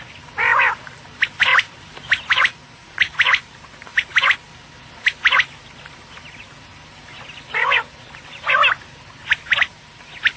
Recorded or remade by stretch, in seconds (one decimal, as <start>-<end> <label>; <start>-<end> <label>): 0.0-10.4 recorded